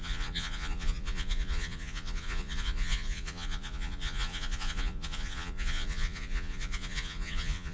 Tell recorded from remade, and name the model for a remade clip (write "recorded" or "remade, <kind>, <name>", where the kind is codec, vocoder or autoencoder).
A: remade, vocoder, Vocos